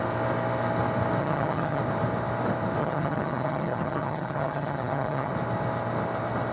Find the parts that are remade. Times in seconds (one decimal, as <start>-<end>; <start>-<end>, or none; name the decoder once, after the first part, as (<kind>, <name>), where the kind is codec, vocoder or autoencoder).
1.2-1.8 (vocoder, HiFi-GAN); 2.8-5.3